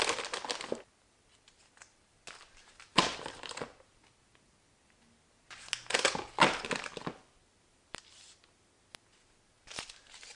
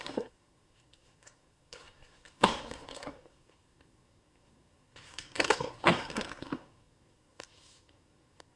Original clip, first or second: first